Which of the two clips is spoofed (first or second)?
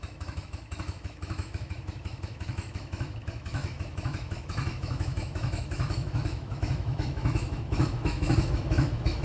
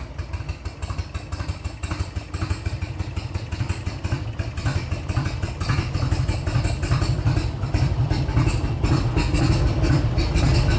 first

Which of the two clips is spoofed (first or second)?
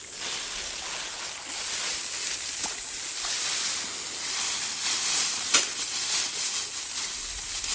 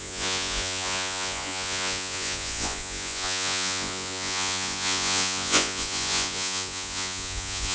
second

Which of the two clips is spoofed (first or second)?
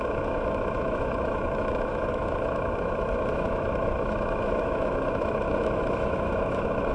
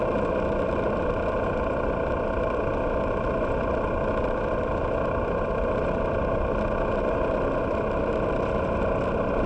first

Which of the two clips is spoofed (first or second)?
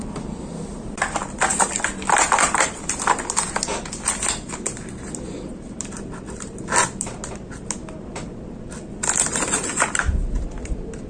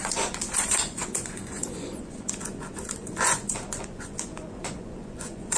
second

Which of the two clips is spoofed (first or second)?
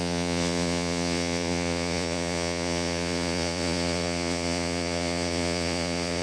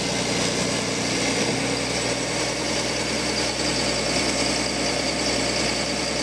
first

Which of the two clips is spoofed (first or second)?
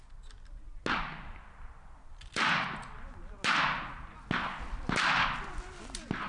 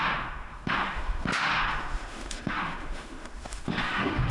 second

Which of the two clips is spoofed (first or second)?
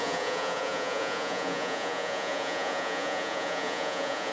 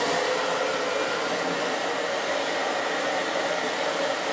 first